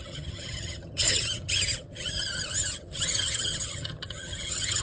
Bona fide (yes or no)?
no